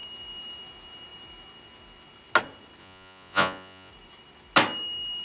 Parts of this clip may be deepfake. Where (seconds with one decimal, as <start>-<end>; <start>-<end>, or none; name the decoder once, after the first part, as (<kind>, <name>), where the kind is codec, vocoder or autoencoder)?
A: 2.8-3.9 (vocoder, Vocos)